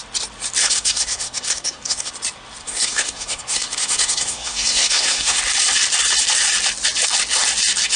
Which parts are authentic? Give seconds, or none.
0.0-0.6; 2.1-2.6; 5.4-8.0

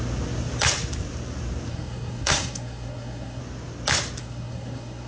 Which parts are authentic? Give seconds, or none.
0.0-1.7; 3.4-4.2

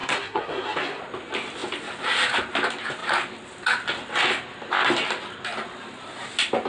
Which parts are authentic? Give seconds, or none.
1.0-6.7

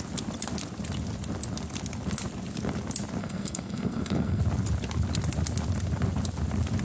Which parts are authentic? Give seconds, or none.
0.0-3.2; 4.4-6.8

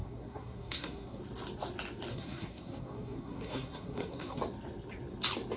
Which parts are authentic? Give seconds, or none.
1.2-2.1; 4.4-5.6

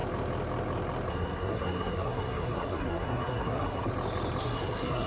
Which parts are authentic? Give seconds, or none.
0.0-1.1; 3.9-4.4